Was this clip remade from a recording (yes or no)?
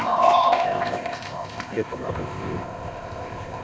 yes